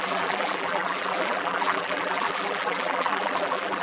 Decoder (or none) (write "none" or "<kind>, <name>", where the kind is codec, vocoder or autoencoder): vocoder, BigVGAN v2